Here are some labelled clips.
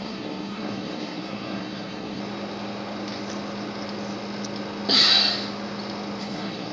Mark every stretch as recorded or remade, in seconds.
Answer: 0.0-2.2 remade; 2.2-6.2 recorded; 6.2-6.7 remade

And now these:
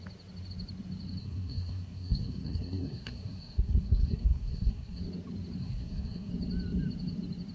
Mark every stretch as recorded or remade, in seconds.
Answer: 0.0-1.2 recorded; 1.2-5.0 remade; 5.0-5.6 recorded; 5.6-6.3 remade; 6.3-7.5 recorded

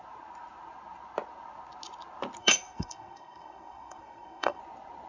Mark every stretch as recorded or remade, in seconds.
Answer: 0.0-2.4 recorded; 2.4-4.6 remade; 4.6-5.1 recorded

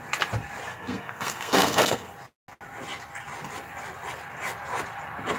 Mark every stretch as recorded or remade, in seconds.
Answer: 0.0-0.7 recorded; 0.7-2.1 remade; 2.1-5.4 recorded